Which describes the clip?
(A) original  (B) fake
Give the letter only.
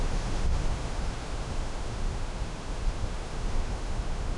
B